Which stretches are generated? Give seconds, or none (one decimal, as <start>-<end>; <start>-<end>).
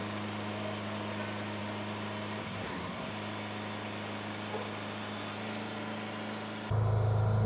2.4-3.1